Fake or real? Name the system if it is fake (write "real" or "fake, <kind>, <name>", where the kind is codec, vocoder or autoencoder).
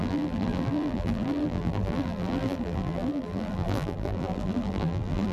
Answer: fake, vocoder, BigVGAN v2